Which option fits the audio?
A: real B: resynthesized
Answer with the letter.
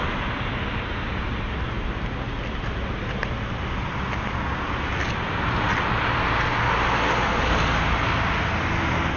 A